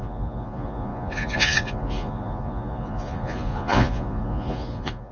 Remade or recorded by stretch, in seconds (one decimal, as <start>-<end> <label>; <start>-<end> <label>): 0.0-5.1 remade